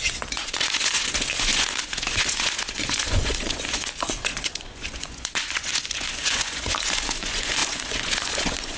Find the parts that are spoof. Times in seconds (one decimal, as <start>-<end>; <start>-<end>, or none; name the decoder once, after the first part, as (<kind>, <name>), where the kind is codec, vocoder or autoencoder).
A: 0.0-8.8 (vocoder, Vocos)